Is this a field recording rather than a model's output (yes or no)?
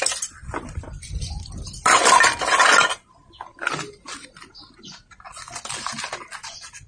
yes